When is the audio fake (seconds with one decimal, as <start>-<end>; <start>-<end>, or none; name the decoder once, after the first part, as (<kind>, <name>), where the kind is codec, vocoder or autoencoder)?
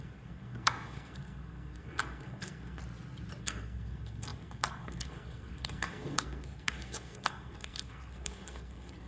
0.0-2.8 (codec, SNAC); 3.4-9.1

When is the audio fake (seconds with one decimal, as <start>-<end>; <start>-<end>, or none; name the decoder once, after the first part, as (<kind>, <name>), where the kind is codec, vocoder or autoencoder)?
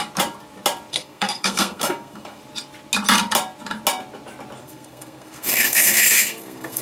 0.9-2.4 (codec, SNAC); 4.6-6.8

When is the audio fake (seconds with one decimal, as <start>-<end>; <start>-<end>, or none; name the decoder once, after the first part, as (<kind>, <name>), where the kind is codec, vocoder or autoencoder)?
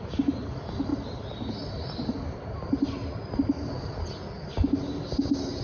none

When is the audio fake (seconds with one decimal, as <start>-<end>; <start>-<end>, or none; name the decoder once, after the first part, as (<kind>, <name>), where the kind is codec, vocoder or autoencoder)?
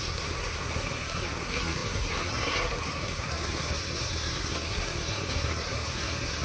0.0-6.4 (codec, SNAC)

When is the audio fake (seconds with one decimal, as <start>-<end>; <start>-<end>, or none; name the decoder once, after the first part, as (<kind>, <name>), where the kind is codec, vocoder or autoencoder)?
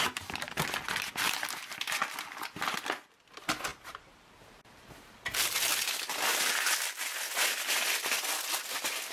none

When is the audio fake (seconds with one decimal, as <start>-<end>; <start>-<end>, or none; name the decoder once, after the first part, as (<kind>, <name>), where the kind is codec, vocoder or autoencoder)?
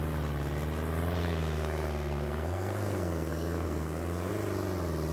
1.2-4.3 (codec, SNAC)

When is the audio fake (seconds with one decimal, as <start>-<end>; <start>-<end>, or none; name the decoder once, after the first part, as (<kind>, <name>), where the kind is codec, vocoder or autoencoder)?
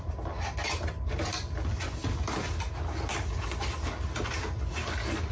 none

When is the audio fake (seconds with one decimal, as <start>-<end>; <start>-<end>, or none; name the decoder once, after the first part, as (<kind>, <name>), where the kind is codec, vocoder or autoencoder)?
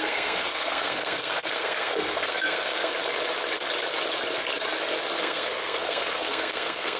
0.0-2.9 (codec, SNAC); 5.2-7.0